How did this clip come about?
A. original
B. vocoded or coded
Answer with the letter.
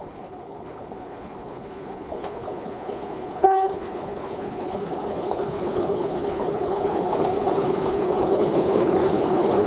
B